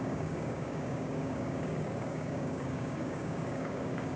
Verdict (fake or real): fake